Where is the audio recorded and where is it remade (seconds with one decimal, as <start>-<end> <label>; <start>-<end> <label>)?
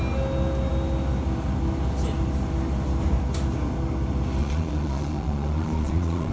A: 0.0-4.4 recorded; 4.4-6.3 remade